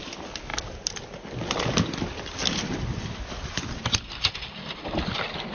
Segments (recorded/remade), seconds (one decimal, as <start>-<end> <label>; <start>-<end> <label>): 0.0-5.5 recorded